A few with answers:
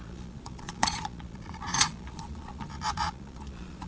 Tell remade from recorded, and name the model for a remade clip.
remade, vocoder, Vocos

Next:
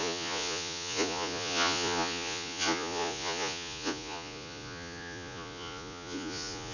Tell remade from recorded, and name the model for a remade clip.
remade, vocoder, Vocos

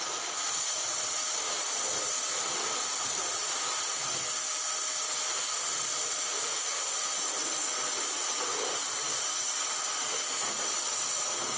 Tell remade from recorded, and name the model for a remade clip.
recorded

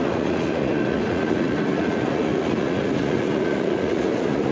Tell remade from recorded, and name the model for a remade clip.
remade, vocoder, Vocos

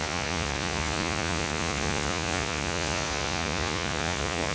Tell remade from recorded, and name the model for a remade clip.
remade, vocoder, Vocos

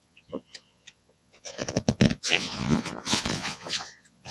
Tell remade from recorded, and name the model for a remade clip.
remade, vocoder, Vocos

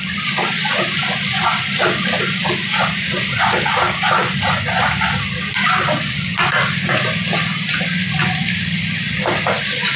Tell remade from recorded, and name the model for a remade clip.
recorded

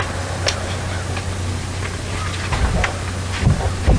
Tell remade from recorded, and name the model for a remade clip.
recorded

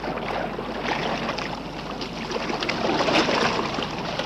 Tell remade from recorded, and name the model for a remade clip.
recorded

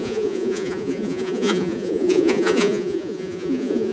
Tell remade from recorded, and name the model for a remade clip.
remade, vocoder, Vocos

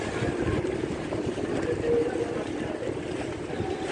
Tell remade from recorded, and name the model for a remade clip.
recorded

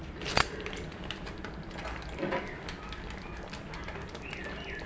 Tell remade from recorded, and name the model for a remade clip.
recorded